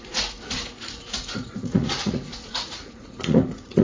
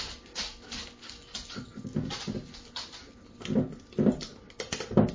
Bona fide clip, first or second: second